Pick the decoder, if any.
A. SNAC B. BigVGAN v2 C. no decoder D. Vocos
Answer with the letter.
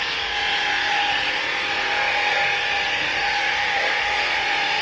D